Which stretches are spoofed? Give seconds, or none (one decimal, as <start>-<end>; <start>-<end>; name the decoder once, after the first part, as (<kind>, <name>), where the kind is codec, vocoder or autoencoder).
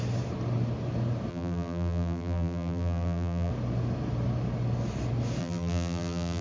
1.3-3.5 (vocoder, BigVGAN v2); 5.4-6.4